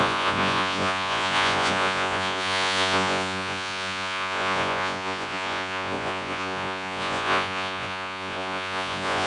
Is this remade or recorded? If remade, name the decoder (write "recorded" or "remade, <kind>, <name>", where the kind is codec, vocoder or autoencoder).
remade, vocoder, Vocos